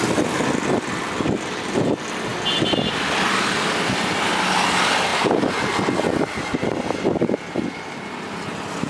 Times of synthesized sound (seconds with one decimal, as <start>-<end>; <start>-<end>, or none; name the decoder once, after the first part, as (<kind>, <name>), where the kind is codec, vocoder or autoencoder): none